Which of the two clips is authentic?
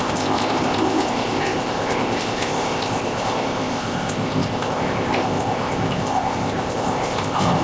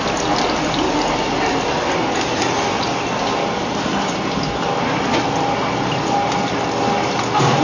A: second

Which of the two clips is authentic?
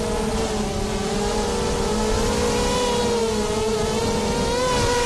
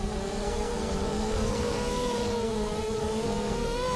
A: first